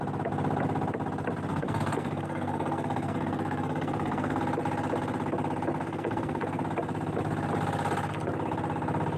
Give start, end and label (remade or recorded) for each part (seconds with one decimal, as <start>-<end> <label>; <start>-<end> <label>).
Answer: 0.0-1.5 recorded; 1.5-4.4 remade; 4.4-5.8 recorded; 5.8-6.6 remade; 6.6-9.2 recorded